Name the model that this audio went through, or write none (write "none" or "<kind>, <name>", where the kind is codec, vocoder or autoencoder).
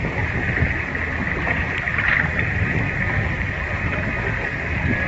none